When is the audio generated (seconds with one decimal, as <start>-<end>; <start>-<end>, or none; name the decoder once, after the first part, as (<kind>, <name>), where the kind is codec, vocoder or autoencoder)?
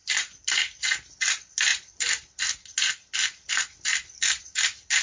none